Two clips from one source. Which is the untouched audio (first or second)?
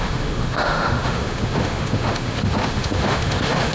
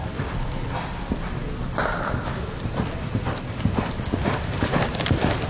second